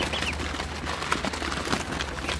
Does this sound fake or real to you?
real